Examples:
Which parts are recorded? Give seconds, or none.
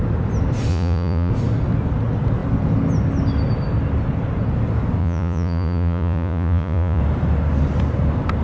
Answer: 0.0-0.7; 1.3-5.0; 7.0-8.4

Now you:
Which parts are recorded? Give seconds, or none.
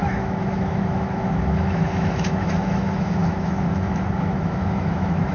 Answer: none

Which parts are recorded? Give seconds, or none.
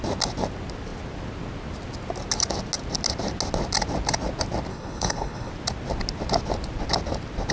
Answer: 0.0-4.7; 5.5-7.5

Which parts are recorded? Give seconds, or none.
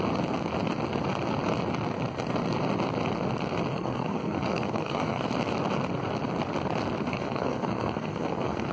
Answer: 0.0-3.7; 5.3-7.1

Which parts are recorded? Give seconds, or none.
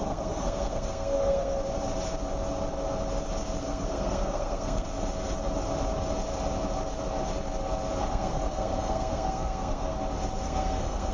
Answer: 1.6-3.6; 4.9-8.1; 9.9-10.4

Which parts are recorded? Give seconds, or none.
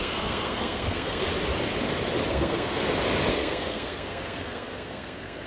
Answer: 1.2-2.3; 2.8-3.3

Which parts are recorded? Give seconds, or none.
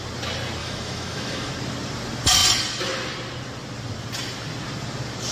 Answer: 0.0-0.6; 1.5-5.3